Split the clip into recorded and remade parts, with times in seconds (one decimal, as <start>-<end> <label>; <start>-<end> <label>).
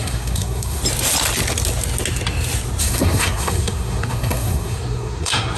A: 0.0-0.8 remade; 0.8-2.8 recorded; 2.8-5.6 remade